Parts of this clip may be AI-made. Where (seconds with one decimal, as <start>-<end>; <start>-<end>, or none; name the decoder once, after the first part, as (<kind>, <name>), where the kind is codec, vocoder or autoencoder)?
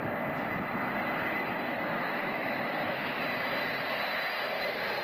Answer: 1.7-3.2 (autoencoder, DAC-VAE)